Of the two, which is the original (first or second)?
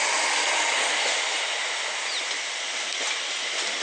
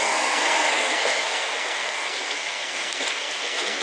first